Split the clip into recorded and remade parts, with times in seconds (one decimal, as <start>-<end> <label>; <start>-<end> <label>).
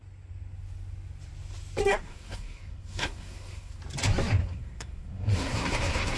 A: 0.0-1.9 recorded; 1.9-3.8 remade; 3.8-4.4 recorded; 4.4-6.2 remade